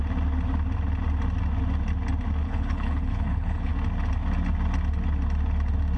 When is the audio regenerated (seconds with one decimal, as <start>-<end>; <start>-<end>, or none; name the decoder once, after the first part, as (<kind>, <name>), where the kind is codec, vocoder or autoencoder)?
2.4-3.7 (codec, HILCodec)